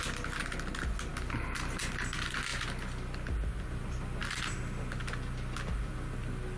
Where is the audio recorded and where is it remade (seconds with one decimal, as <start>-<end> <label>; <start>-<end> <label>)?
0.0-6.6 recorded

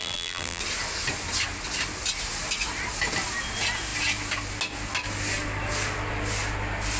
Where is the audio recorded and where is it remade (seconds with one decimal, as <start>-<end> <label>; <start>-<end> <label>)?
0.0-0.6 remade; 0.6-7.0 recorded

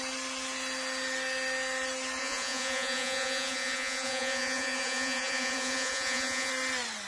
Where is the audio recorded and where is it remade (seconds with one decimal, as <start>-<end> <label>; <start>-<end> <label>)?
0.0-2.2 recorded; 2.2-6.5 remade; 6.5-7.1 recorded

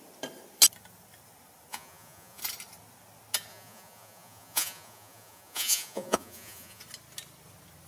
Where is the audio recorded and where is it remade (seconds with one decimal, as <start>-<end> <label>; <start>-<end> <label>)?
0.0-1.7 recorded; 1.7-2.4 remade; 2.4-3.5 recorded; 3.5-6.8 remade; 6.8-7.9 recorded